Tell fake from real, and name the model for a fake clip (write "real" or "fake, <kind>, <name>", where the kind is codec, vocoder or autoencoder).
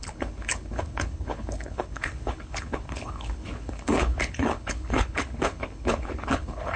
fake, codec, HILCodec